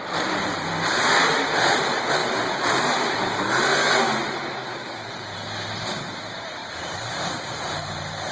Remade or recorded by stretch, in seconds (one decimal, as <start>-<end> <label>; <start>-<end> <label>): 0.0-8.3 remade